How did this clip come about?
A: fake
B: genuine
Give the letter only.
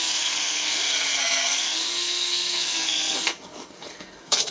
A